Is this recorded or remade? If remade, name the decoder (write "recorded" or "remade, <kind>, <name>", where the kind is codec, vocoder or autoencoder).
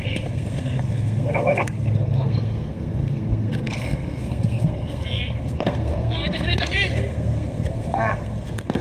remade, codec, SNAC